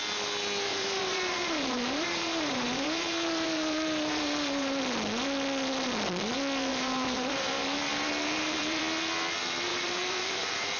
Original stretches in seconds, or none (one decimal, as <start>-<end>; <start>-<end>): 0.0-0.7; 4.8-6.7; 8.8-9.7